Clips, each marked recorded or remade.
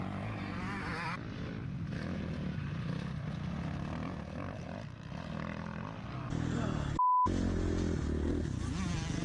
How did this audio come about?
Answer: recorded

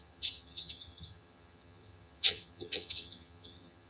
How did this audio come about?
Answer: remade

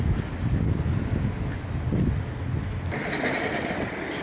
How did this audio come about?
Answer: recorded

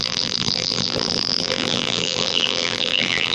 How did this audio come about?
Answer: remade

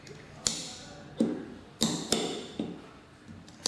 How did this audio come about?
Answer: recorded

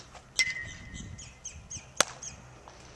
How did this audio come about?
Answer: recorded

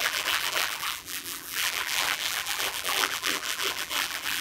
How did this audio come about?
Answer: remade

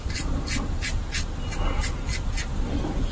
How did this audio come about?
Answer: recorded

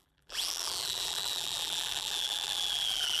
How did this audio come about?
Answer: remade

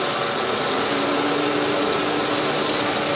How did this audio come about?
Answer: recorded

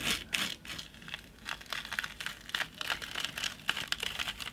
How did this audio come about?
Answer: recorded